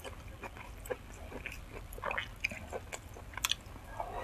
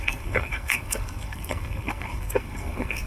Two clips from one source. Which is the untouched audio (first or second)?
first